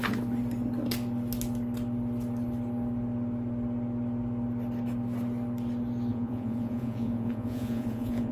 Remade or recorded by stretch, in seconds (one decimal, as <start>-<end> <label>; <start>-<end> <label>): 0.0-6.1 recorded; 6.1-8.3 remade